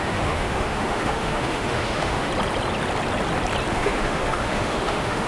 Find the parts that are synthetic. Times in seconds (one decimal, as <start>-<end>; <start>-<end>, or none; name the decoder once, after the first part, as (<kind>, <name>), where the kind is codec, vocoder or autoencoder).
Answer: 0.0-2.3 (autoencoder, DAC-VAE); 3.7-5.3